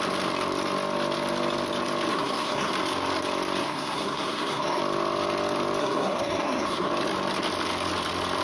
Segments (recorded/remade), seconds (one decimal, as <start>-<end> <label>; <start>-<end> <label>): 0.0-2.1 recorded; 2.1-2.7 remade; 2.7-3.6 recorded; 3.6-4.8 remade; 4.8-5.8 recorded; 5.8-6.9 remade; 6.9-8.4 recorded